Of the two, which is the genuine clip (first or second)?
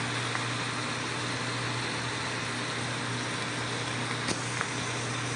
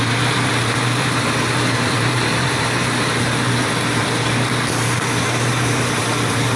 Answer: first